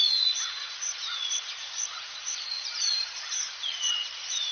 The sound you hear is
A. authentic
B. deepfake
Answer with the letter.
B